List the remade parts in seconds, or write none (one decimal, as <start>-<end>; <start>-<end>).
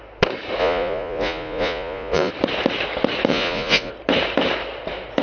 0.6-2.3; 3.3-3.9